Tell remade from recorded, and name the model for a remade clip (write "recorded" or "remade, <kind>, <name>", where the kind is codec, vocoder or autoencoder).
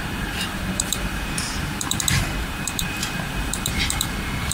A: remade, vocoder, BigVGAN v2